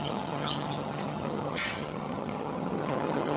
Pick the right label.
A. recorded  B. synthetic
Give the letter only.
B